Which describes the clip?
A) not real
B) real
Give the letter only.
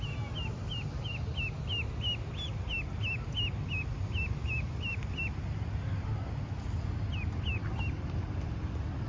B